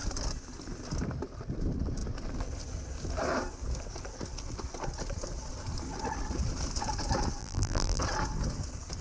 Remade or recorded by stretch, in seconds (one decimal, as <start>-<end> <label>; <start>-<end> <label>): 0.0-7.4 recorded; 7.4-8.0 remade; 8.0-9.0 recorded